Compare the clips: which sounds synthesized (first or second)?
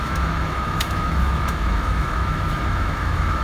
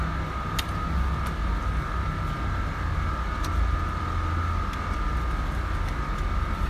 first